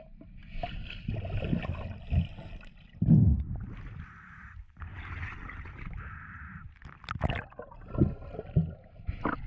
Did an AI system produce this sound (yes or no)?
no